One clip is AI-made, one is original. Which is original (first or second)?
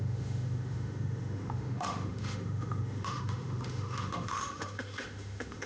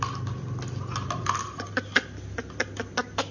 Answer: second